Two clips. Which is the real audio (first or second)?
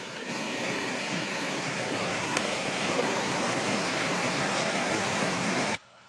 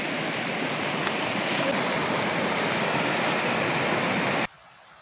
second